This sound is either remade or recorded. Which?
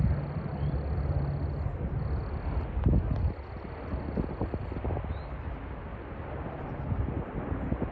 recorded